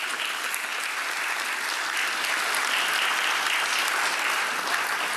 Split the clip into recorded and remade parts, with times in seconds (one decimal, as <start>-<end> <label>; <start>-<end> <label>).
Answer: 0.0-5.2 recorded